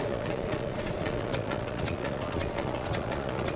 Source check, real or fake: fake